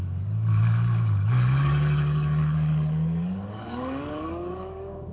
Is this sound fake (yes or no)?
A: yes